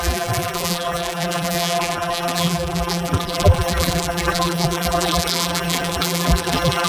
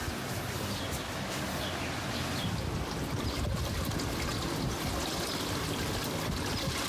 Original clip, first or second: second